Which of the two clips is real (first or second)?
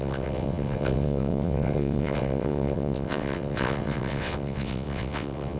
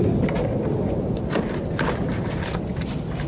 second